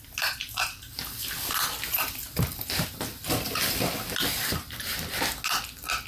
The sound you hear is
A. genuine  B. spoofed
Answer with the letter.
A